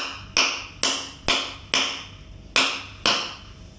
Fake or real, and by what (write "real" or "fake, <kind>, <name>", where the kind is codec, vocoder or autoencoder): real